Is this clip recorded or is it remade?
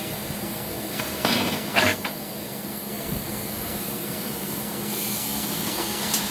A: remade